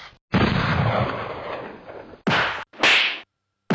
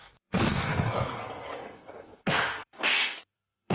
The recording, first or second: first